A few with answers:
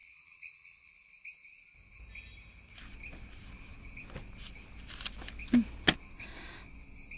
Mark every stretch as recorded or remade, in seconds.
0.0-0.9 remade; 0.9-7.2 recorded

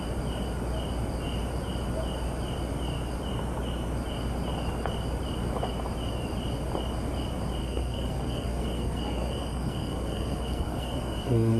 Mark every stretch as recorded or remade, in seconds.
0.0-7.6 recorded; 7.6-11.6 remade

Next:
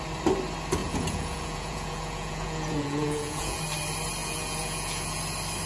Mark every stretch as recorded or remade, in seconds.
0.0-0.8 recorded; 0.8-3.6 remade; 3.6-4.2 recorded; 4.2-5.2 remade; 5.2-5.7 recorded

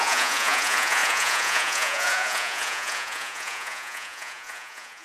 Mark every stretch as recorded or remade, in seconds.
0.0-5.0 remade